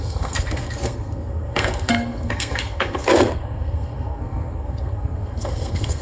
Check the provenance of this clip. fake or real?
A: fake